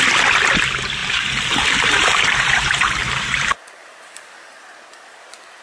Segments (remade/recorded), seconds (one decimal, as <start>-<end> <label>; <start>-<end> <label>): 0.0-1.0 recorded; 1.0-4.4 remade; 4.4-5.6 recorded